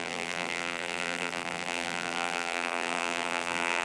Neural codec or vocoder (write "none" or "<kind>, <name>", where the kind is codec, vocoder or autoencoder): vocoder, BigVGAN v2